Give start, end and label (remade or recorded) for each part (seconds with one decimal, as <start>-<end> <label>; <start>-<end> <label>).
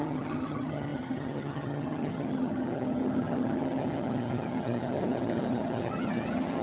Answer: 0.0-6.6 remade